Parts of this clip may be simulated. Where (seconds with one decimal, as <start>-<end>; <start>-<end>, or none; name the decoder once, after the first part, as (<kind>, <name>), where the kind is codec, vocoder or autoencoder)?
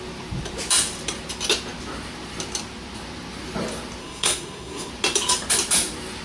4.0-4.9 (codec, SNAC)